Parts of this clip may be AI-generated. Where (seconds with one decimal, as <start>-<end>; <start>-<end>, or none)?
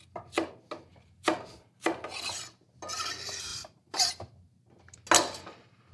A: 0.9-2.2; 3.5-4.1